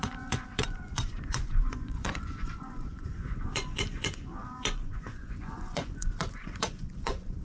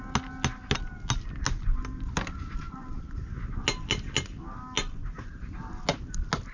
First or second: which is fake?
first